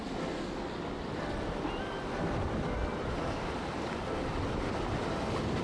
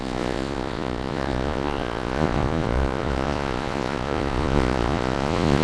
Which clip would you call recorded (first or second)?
first